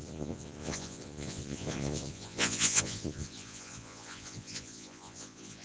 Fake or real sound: fake